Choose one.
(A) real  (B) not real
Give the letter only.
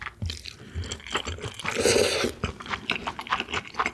A